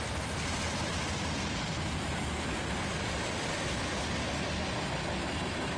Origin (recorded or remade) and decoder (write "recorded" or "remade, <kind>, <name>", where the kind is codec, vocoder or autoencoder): recorded